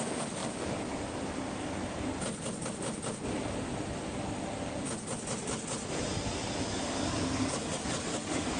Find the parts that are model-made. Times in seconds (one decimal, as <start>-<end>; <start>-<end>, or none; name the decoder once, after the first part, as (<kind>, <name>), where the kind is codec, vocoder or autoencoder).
0.0-1.8 (codec, DAC); 6.8-8.6